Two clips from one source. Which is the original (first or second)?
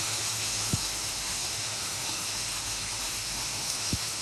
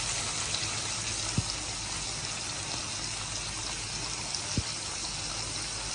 second